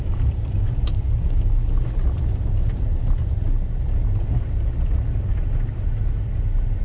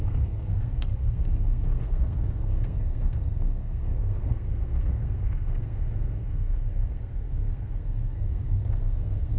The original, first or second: first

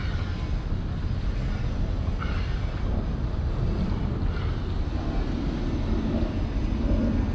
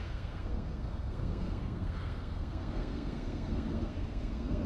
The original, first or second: first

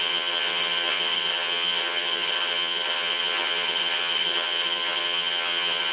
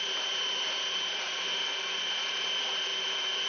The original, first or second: second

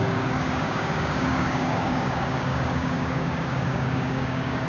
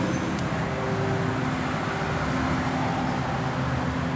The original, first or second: second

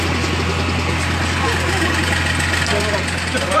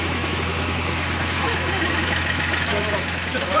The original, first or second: first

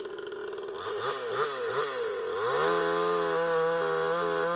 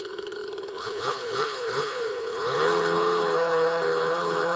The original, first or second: first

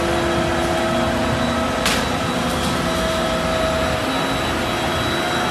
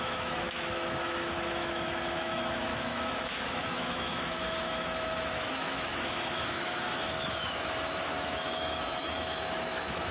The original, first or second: first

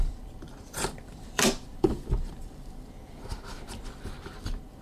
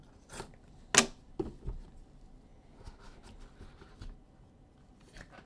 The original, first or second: second